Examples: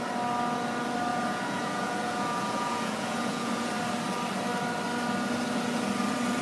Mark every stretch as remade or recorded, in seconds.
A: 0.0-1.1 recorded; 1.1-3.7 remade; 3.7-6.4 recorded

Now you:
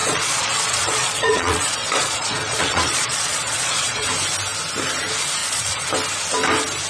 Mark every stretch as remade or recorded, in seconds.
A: 0.0-4.1 remade; 4.1-5.4 recorded; 5.4-5.9 remade; 5.9-6.9 recorded

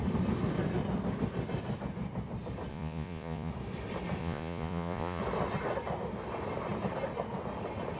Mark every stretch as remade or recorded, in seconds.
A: 0.0-2.7 recorded; 2.7-3.5 remade; 3.5-4.2 recorded; 4.2-5.2 remade; 5.2-8.0 recorded

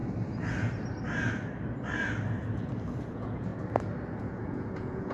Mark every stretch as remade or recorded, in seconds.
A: 0.0-3.1 recorded; 3.1-3.5 remade; 3.5-4.2 recorded; 4.2-5.1 remade

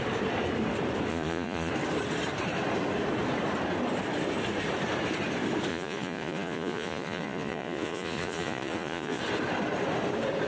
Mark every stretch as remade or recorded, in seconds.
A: 0.0-1.1 recorded; 1.1-1.7 remade; 1.7-5.7 recorded; 5.7-9.2 remade; 9.2-10.5 recorded

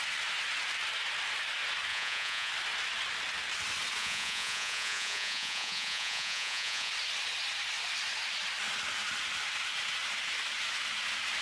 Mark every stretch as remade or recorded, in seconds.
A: 0.0-1.9 recorded; 1.9-2.5 remade; 2.5-4.0 recorded; 4.0-6.9 remade; 6.9-11.4 recorded

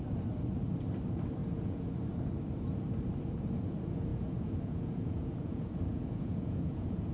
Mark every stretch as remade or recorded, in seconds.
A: 0.0-1.4 recorded; 1.4-1.9 remade; 1.9-4.1 recorded; 4.1-7.1 remade

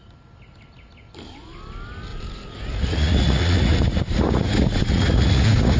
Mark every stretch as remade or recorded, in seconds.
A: 0.0-2.1 recorded; 2.1-5.8 remade